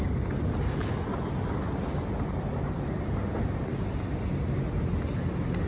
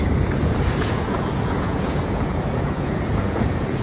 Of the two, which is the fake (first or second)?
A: second